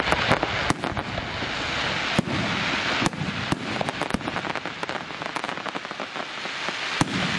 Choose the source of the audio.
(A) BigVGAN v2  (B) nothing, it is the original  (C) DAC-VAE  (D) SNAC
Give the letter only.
B